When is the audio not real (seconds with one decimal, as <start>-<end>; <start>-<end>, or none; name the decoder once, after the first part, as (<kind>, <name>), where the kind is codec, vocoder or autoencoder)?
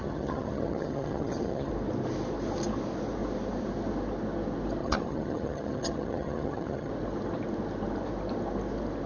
0.0-1.7 (vocoder, HiFi-GAN); 4.8-6.9